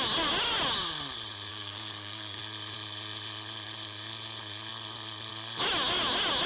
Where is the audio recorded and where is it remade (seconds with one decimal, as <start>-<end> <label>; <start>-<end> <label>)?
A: 0.0-1.5 recorded; 1.5-2.4 remade; 2.4-6.5 recorded